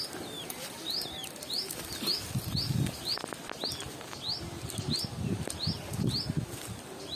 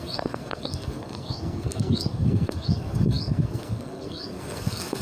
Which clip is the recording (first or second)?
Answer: first